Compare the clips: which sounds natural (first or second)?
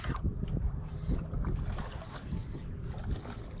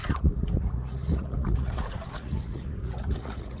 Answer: first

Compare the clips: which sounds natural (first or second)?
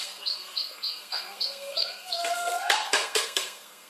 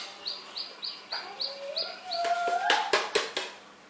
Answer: second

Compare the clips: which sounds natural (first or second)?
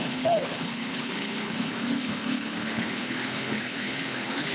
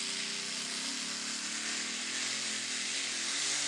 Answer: second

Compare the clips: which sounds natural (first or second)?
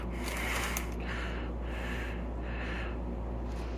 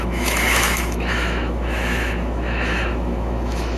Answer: first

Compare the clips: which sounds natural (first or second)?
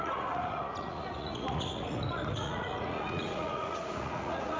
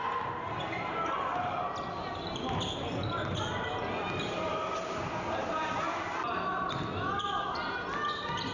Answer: second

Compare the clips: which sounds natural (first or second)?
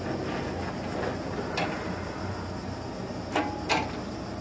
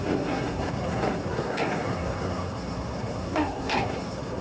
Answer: first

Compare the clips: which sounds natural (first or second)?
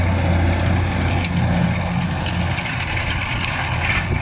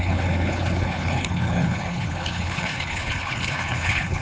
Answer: first